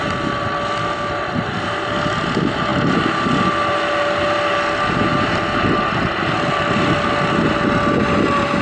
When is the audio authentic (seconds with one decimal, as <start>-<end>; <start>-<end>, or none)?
0.0-8.6